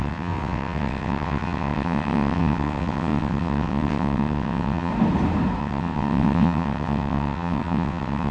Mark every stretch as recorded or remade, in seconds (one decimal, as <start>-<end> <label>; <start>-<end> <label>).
0.0-4.9 remade; 4.9-5.6 recorded; 5.6-8.3 remade